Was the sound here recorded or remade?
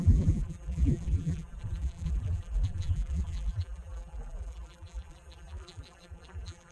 remade